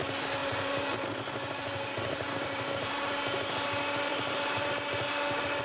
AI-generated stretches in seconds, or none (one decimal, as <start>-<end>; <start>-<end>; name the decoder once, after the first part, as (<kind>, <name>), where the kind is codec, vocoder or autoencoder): 0.4-3.1 (vocoder, BigVGAN v2); 4.1-4.7